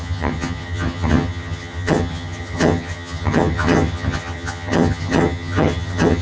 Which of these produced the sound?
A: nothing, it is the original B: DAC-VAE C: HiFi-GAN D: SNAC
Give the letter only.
C